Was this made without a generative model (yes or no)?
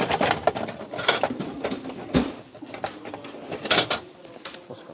no